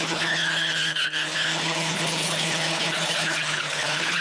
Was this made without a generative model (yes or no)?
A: no